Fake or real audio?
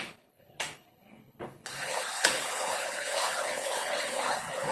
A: fake